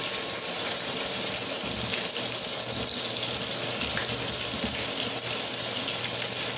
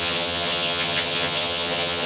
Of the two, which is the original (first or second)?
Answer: first